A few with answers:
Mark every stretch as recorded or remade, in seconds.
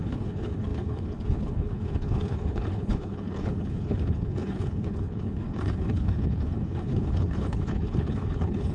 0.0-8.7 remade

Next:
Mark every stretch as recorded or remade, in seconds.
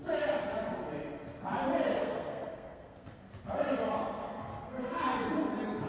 0.0-2.0 recorded; 2.0-3.3 remade; 3.3-4.2 recorded; 4.2-4.9 remade; 4.9-5.9 recorded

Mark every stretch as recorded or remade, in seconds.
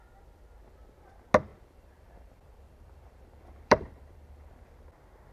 0.0-1.5 recorded; 1.5-4.6 remade; 4.6-5.3 recorded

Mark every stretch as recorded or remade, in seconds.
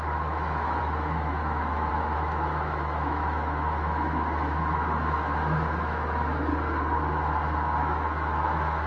0.0-6.5 remade; 6.5-7.8 recorded; 7.8-8.9 remade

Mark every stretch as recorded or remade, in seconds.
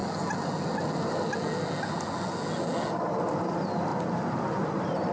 0.0-5.1 recorded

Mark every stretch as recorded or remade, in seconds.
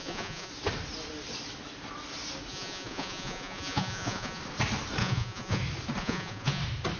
0.0-0.5 remade; 0.5-2.5 recorded; 2.5-4.4 remade; 4.4-5.0 recorded; 5.0-5.6 remade; 5.6-6.0 recorded; 6.0-6.6 remade; 6.6-7.0 recorded